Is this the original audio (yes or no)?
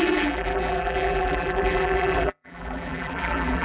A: no